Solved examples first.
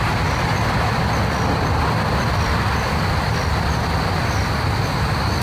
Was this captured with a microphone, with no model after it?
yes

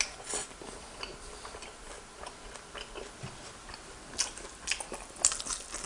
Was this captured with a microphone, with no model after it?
yes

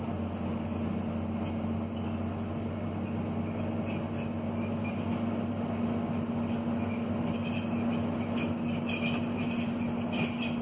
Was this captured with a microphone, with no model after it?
yes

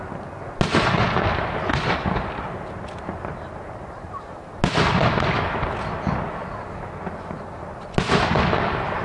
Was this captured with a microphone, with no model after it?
yes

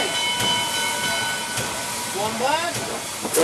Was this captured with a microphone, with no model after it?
yes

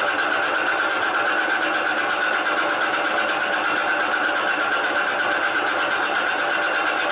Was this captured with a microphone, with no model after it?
yes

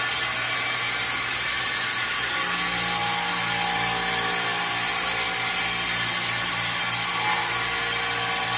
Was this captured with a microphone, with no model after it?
yes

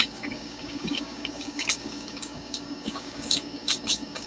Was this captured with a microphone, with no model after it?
no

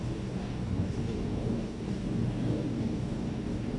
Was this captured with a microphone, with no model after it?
no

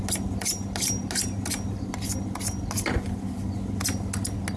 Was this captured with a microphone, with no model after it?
yes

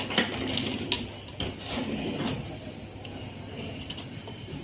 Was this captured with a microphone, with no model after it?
yes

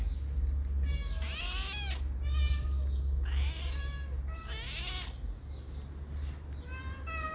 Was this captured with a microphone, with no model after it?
yes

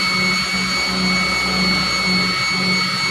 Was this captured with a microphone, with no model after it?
yes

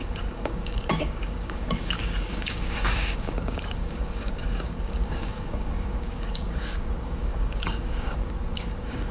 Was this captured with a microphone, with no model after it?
no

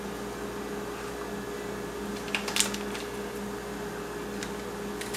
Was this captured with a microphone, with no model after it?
yes